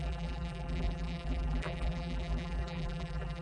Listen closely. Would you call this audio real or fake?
fake